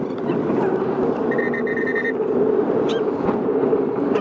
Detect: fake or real fake